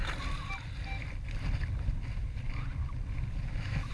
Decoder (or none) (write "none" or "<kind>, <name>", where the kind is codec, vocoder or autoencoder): none